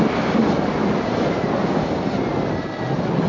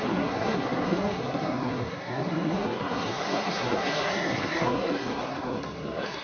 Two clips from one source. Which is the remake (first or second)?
second